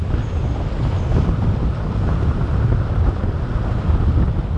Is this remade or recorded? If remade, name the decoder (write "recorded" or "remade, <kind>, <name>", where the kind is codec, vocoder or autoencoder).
recorded